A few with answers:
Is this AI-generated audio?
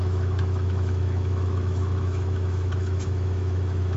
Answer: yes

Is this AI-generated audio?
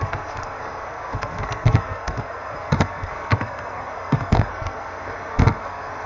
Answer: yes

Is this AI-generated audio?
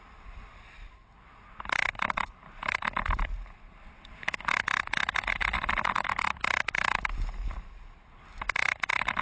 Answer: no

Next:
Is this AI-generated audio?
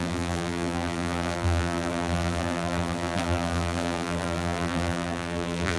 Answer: yes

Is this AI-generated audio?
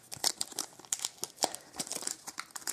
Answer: no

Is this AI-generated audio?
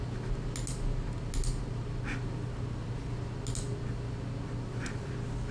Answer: no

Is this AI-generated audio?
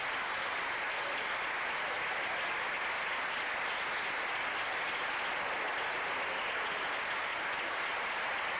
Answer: no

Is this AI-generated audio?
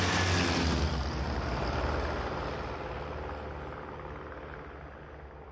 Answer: no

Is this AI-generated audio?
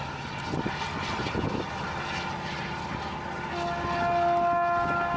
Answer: no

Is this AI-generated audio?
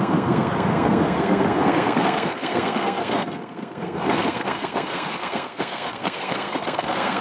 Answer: yes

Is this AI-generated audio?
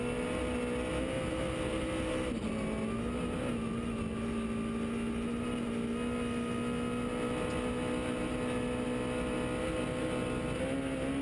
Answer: no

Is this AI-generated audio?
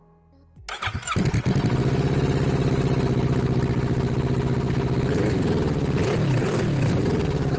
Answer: no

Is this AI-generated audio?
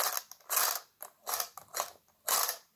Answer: no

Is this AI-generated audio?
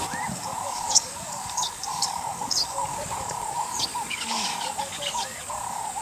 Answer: yes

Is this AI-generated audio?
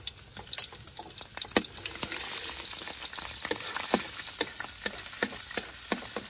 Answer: no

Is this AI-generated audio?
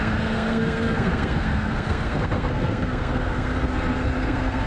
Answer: yes